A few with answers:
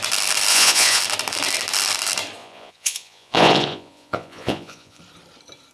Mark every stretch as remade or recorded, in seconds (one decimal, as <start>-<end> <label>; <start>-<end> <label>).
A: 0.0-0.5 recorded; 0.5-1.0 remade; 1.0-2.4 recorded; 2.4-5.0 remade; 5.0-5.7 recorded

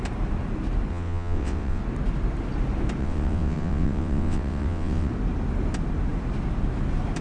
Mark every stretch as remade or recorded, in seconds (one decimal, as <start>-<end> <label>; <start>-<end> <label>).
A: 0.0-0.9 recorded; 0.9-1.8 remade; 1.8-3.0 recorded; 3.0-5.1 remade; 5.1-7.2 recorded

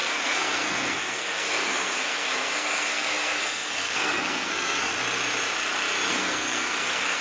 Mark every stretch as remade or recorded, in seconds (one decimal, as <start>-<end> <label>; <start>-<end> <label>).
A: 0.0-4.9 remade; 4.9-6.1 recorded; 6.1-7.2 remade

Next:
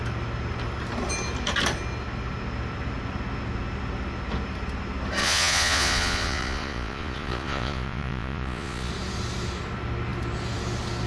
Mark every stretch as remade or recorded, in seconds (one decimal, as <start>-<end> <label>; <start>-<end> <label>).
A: 0.0-5.2 recorded; 5.2-8.9 remade; 8.9-11.1 recorded